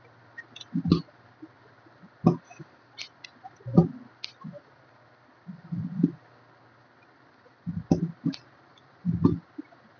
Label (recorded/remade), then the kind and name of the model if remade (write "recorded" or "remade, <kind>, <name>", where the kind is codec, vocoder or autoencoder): recorded